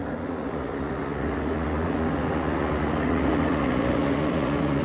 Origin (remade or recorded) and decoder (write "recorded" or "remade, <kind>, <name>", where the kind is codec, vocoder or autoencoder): remade, vocoder, Vocos